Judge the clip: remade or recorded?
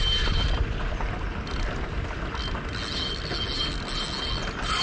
recorded